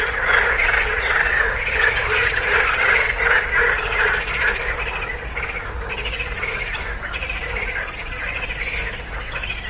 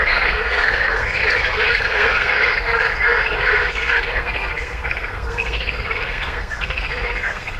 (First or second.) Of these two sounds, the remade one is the second